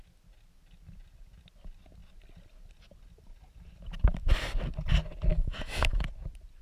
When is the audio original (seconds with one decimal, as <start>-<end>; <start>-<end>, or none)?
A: 0.0-5.3; 6.0-6.6